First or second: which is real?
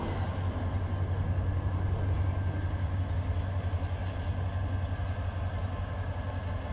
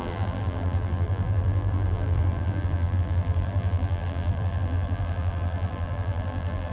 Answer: first